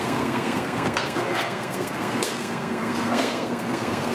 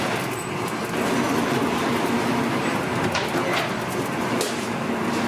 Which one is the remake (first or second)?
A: first